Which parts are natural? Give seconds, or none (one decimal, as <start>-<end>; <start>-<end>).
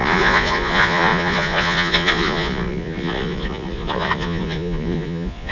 none